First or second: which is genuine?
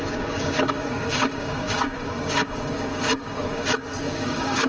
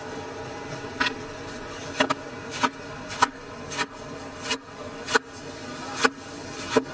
second